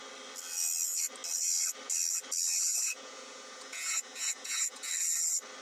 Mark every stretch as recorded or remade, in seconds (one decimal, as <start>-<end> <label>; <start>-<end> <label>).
0.0-2.7 recorded; 2.7-4.9 remade; 4.9-5.6 recorded